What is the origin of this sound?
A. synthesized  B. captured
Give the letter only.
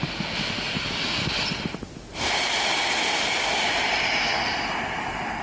B